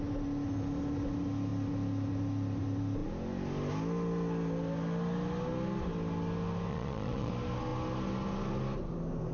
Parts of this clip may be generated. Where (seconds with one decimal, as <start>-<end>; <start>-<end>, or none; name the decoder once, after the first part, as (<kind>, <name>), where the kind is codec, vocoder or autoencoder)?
6.7-7.3 (vocoder, Vocos)